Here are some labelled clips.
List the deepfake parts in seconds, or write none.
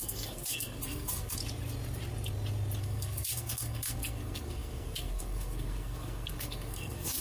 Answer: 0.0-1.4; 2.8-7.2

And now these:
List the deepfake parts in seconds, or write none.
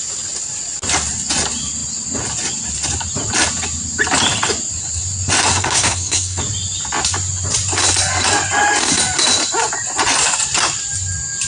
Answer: 5.5-6.4